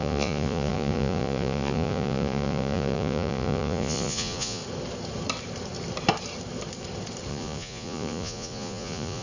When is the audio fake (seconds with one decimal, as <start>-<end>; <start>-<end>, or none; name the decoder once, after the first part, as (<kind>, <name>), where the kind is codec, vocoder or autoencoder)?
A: 0.0-4.6 (vocoder, Vocos); 7.3-9.2